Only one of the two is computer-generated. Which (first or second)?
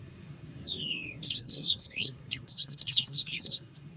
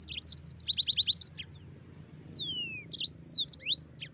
first